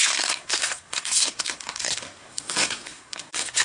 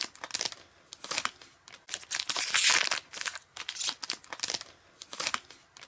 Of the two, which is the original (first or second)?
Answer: second